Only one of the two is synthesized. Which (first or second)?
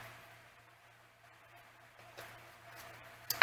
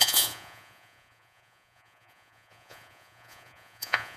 second